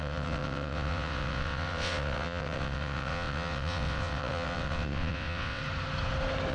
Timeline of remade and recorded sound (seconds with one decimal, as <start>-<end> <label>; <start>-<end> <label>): 0.0-5.6 remade; 5.6-6.5 recorded